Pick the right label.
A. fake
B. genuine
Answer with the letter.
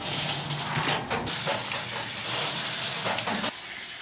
B